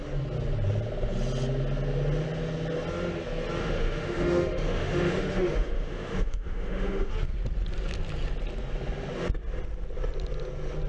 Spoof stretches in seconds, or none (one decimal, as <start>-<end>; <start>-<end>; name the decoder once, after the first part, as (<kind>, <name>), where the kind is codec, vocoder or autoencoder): 3.6-7.1 (autoencoder, DAC-VAE)